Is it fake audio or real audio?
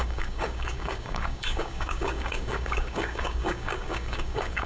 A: fake